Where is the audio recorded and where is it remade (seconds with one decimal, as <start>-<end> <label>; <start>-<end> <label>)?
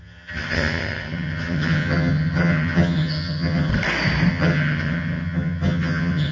0.0-3.7 remade; 3.7-4.3 recorded; 4.3-6.3 remade